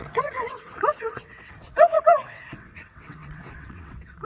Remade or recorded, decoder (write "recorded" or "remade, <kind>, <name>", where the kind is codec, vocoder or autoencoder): remade, vocoder, WaveNeXt